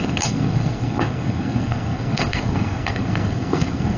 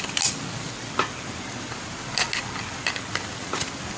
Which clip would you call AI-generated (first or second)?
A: first